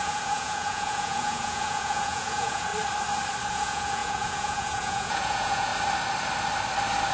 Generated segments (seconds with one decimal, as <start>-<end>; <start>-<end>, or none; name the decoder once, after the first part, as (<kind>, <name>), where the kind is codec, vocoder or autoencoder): 0.0-2.7 (vocoder, Vocos); 3.5-5.7